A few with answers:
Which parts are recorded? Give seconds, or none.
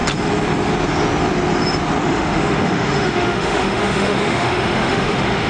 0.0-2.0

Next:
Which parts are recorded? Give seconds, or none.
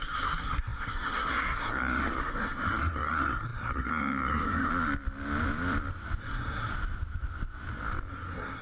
4.7-6.2; 6.7-8.1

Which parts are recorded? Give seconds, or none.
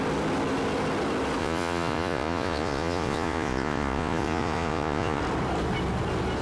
0.0-1.4; 5.2-6.4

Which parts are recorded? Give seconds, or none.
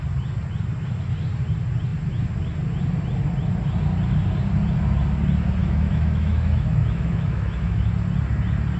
0.0-5.6; 7.9-8.8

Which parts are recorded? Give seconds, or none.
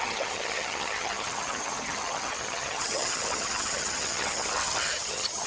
none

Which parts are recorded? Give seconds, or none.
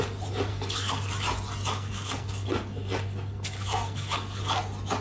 0.0-0.5; 1.1-1.7; 4.4-5.0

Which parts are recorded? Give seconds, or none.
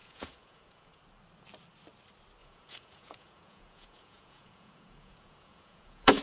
1.0-2.4